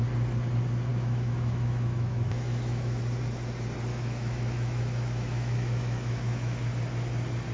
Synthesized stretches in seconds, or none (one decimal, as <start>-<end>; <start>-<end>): 0.9-3.0; 3.9-6.7